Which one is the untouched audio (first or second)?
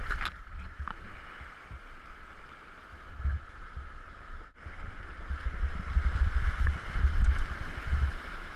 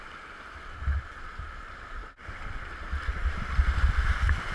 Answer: first